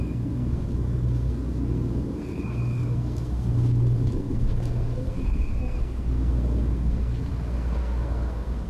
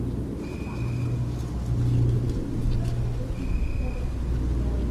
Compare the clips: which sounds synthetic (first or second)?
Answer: first